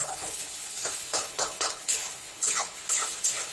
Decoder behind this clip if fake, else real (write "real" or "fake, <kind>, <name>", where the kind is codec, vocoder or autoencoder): fake, codec, HILCodec